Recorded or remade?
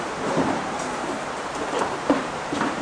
remade